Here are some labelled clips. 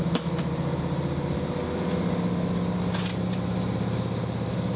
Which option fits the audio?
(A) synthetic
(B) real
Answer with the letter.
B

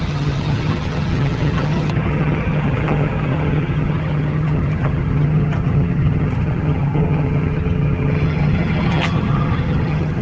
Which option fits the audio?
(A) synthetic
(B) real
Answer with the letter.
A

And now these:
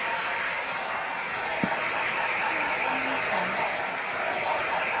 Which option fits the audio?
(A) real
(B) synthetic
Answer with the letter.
A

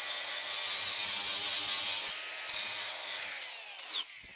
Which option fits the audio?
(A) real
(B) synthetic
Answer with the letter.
A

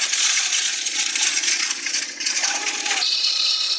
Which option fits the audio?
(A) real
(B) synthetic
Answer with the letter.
B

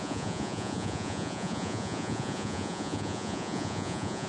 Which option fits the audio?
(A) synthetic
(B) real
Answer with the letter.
A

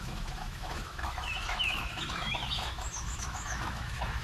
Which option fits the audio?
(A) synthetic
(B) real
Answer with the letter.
A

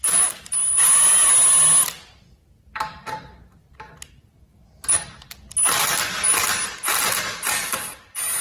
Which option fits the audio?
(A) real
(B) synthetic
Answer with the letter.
A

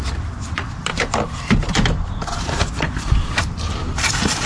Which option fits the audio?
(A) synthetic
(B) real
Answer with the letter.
A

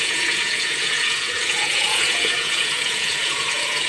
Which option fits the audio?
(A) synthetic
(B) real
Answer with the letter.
A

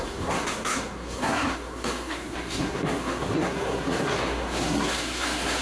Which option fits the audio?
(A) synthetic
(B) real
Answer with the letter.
A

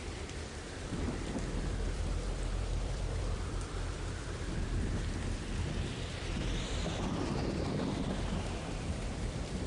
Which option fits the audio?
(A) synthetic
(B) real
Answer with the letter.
A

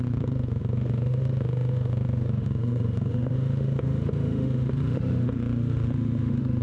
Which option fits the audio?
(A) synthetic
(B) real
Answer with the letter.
A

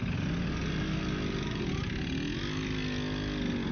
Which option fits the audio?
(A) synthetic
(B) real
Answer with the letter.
B